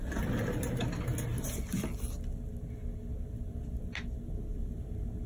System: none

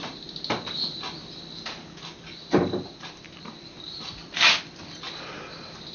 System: none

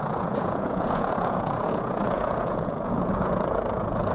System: vocoder, Vocos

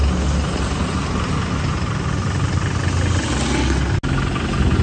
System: none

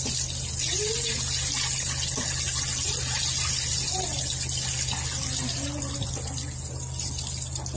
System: none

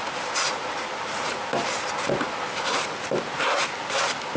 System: none